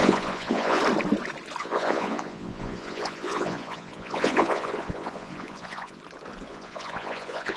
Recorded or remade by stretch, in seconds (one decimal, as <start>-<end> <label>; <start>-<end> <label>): 0.0-0.8 remade; 0.8-1.6 recorded; 1.6-6.0 remade; 6.0-6.5 recorded; 6.5-7.6 remade